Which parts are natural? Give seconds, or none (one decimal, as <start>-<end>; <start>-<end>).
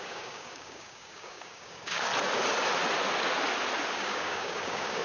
2.1-3.9